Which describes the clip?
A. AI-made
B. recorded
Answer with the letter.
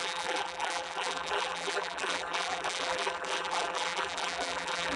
A